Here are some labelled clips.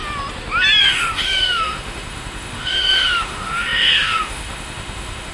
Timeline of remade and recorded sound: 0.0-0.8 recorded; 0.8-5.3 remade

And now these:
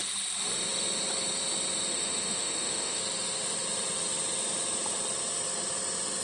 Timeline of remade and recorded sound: 0.0-1.9 recorded; 1.9-3.0 remade; 3.0-6.2 recorded

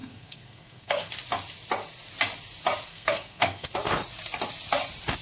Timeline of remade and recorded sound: 0.0-1.1 remade; 1.1-2.9 recorded; 2.9-3.7 remade; 3.7-5.2 recorded

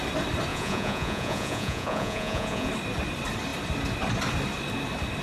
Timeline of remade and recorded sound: 0.0-0.5 recorded; 0.5-2.7 remade; 2.7-5.2 recorded

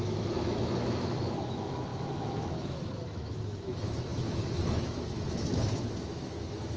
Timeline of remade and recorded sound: 0.0-6.8 remade